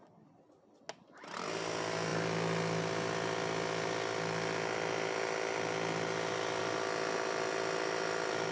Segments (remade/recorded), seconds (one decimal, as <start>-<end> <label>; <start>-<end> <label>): 0.0-8.5 recorded